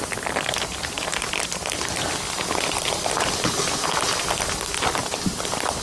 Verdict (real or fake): real